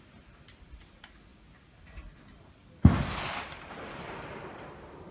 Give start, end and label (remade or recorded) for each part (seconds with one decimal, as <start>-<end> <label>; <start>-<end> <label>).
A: 0.0-5.1 recorded